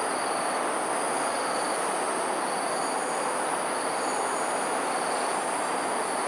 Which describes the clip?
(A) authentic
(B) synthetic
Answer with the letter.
A